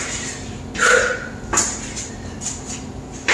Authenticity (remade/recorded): recorded